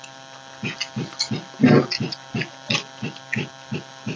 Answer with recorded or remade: recorded